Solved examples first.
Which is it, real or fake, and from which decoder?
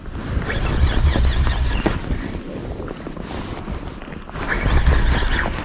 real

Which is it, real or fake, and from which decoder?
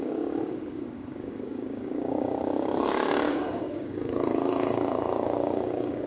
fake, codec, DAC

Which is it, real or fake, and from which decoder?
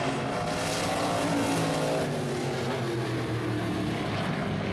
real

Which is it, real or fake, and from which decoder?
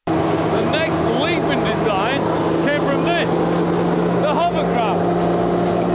real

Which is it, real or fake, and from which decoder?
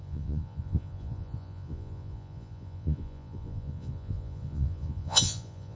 fake, vocoder, Vocos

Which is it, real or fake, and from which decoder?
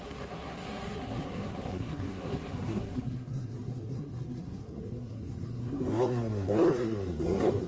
fake, codec, SNAC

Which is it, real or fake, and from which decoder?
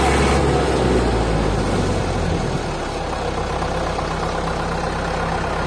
real